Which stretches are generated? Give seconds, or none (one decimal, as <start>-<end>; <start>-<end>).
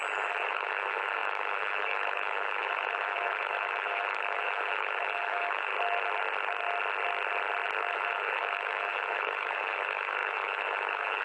0.0-5.7; 7.9-11.2